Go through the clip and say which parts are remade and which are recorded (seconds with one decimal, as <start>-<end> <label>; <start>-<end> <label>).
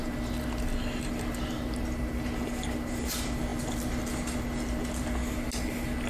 0.0-6.1 recorded